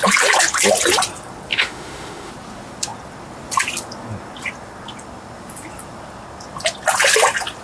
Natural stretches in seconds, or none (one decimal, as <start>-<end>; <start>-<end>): 0.0-1.5; 2.3-7.6